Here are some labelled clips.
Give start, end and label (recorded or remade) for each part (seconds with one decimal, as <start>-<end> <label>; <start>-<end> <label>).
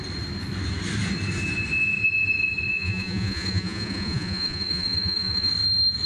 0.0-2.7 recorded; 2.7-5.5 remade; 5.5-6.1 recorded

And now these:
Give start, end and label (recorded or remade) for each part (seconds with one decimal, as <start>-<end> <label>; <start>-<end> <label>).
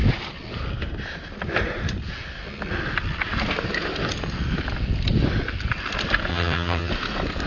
0.0-6.3 recorded; 6.3-6.9 remade; 6.9-7.5 recorded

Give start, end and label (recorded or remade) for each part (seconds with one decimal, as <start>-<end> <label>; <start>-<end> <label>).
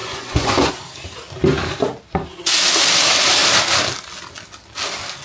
0.0-0.7 remade; 0.7-5.2 recorded